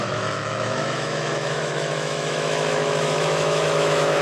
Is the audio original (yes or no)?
no